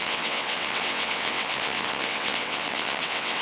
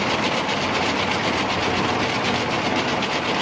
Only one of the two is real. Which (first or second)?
second